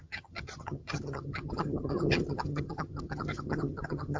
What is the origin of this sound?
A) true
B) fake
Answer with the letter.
B